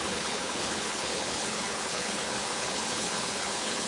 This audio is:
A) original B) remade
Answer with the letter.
B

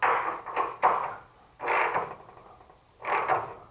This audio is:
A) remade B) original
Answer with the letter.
B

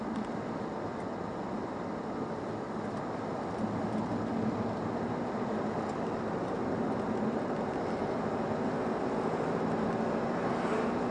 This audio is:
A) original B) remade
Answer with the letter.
A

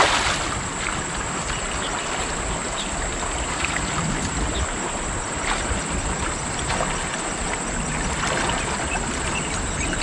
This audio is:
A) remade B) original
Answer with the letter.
B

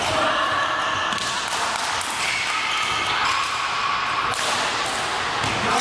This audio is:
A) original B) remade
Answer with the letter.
A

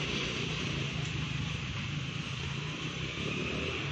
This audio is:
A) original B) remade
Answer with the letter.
B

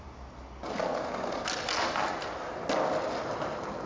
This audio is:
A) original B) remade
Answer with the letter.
A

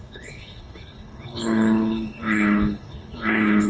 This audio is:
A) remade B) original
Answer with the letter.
A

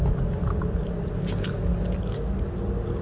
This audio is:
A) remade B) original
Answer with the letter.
B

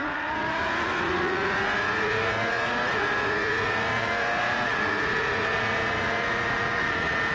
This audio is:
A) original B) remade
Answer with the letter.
B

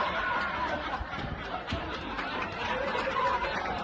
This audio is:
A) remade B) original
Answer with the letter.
A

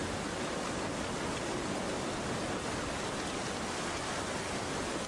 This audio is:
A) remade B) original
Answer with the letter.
B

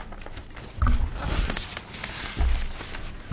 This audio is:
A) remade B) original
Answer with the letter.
B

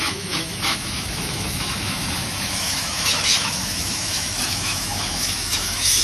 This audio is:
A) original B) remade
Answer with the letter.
B